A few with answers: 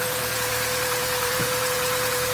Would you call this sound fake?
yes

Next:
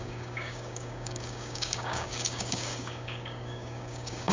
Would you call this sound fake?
yes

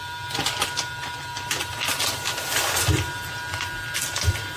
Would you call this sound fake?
no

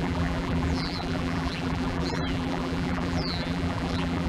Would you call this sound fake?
yes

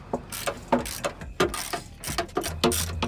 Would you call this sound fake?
no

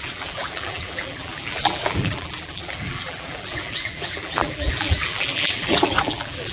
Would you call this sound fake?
yes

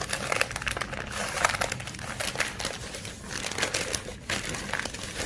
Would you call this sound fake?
no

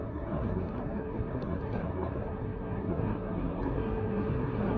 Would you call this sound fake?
yes